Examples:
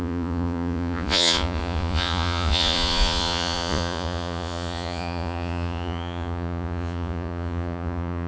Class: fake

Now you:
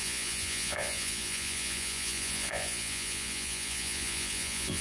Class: fake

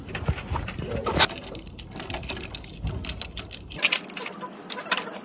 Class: real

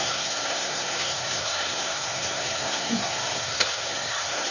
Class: fake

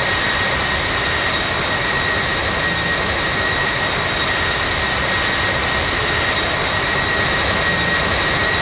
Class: real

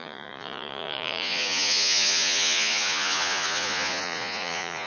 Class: fake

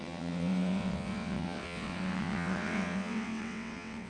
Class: fake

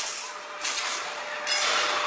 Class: real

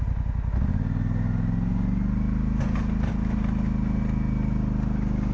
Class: real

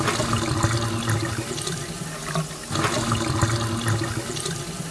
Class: real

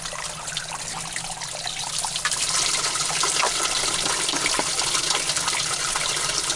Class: real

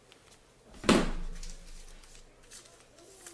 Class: real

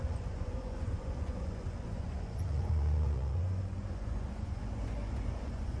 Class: fake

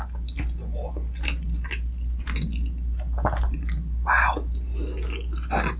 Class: real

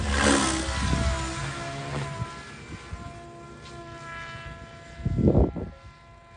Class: real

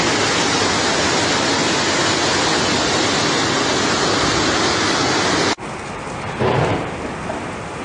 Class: real